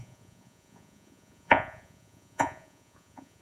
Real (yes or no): no